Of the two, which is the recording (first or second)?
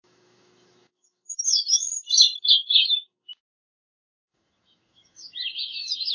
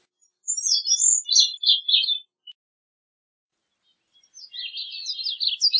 second